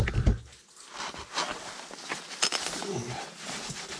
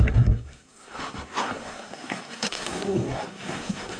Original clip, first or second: first